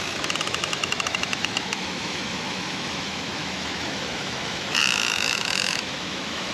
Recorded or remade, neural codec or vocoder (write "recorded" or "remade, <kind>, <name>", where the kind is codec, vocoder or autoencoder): remade, autoencoder, DAC-VAE